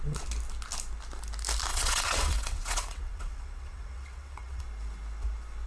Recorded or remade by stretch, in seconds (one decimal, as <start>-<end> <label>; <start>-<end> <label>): 0.0-1.7 recorded; 1.7-4.6 remade; 4.6-5.7 recorded